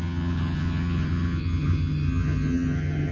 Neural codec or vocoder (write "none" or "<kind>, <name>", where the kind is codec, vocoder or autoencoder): vocoder, HiFi-GAN